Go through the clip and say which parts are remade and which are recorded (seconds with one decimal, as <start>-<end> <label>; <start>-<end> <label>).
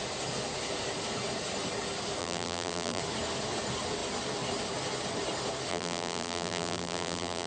0.0-2.2 recorded; 2.2-3.0 remade; 3.0-5.7 recorded; 5.7-7.5 remade